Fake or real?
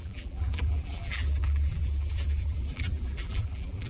fake